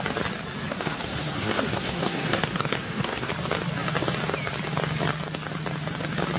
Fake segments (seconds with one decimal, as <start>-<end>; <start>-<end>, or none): 0.7-3.3